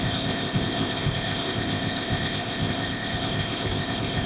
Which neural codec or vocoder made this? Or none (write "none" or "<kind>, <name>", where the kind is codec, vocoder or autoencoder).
codec, ZipCodec